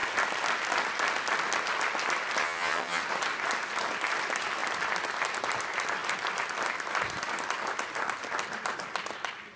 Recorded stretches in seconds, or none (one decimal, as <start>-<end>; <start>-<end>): 0.0-2.4; 3.0-9.6